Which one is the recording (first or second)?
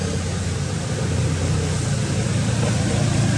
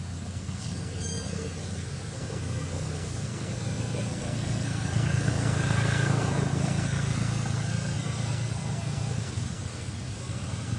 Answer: first